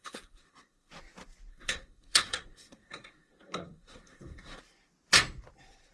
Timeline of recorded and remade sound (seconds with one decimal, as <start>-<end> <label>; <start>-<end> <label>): 0.0-0.9 remade; 0.9-1.5 recorded; 1.5-4.6 remade; 4.6-5.9 recorded